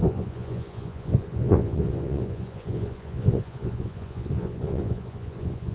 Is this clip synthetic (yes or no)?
yes